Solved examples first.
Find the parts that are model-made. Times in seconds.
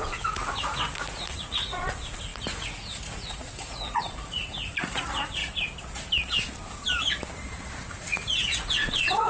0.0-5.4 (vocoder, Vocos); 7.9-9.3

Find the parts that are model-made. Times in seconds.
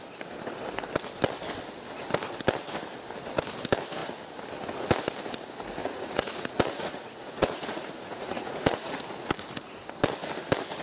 5.8-9.0 (vocoder, Vocos)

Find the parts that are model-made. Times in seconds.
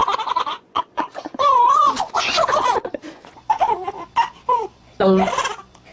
0.0-3.5 (vocoder, Vocos)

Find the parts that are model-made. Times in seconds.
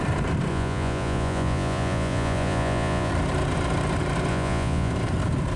0.5-3.1 (vocoder, Vocos); 4.3-4.9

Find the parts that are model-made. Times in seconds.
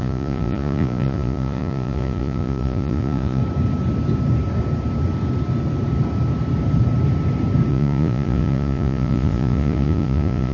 0.0-3.4 (vocoder, Vocos); 7.7-10.5